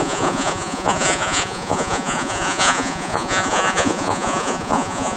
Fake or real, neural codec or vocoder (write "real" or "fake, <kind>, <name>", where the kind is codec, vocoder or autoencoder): fake, vocoder, Vocos